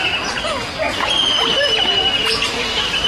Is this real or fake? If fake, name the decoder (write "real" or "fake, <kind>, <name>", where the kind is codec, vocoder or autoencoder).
real